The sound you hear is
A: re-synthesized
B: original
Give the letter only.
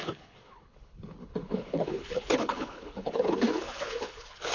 A